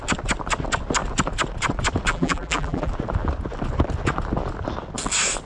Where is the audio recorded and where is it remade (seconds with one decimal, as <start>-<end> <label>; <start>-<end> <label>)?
0.0-2.1 recorded; 2.1-2.9 remade; 2.9-5.5 recorded

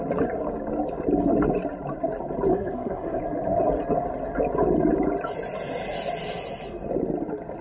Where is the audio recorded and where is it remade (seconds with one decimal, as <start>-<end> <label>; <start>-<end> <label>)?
0.0-2.5 recorded; 2.5-3.2 remade; 3.2-7.6 recorded

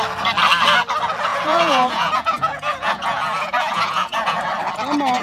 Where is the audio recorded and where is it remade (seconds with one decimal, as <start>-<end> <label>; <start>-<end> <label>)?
0.0-1.3 recorded; 1.3-4.4 remade; 4.4-5.2 recorded

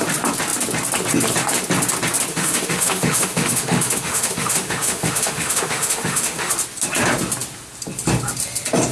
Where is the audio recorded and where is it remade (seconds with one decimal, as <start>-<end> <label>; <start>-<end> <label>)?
0.0-2.3 recorded; 2.3-6.5 remade; 6.5-8.9 recorded